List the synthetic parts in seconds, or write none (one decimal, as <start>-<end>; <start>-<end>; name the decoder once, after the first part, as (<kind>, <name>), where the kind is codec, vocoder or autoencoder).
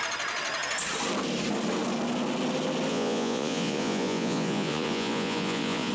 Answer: 2.9-5.9 (vocoder, Vocos)